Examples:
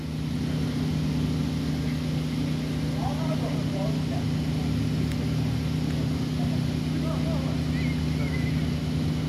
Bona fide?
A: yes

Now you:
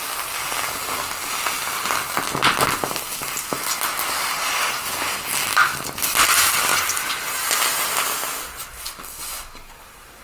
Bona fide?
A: yes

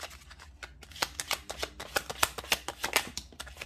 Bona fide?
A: yes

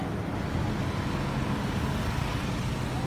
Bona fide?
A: yes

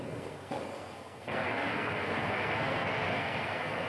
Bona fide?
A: no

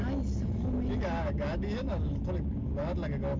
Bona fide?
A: yes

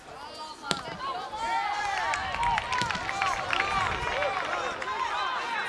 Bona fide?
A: yes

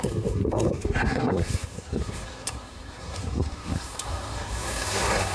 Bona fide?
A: no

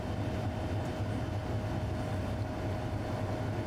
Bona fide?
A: yes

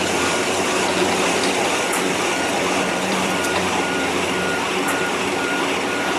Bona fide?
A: no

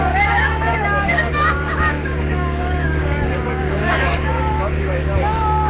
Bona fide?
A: no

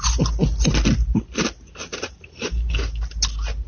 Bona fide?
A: yes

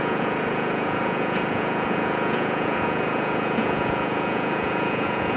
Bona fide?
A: no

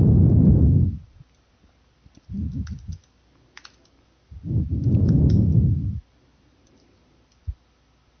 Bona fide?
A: yes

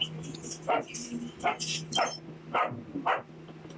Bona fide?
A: yes